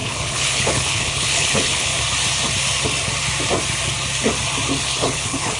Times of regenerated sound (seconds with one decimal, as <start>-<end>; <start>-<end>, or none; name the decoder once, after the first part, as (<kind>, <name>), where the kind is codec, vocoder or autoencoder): 0.0-1.9 (codec, HILCodec); 4.8-5.6